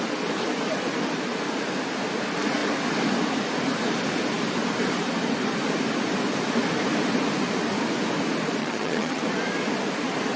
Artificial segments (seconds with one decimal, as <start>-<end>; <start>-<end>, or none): 8.6-9.2